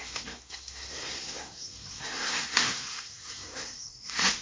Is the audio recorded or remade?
remade